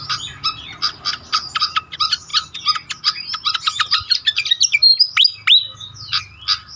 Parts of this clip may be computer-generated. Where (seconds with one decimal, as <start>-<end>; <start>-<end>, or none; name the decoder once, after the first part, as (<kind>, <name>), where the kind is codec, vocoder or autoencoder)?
none